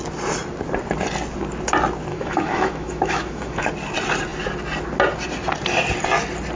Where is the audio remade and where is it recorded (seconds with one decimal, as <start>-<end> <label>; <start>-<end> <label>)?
0.0-2.1 recorded; 2.1-3.7 remade; 3.7-6.5 recorded